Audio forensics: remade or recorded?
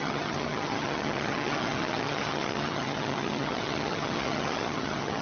remade